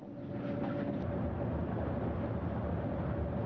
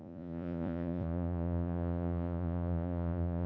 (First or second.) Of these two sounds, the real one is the first